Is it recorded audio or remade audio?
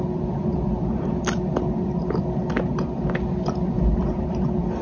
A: recorded